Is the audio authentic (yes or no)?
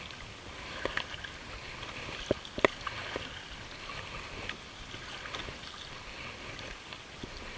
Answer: yes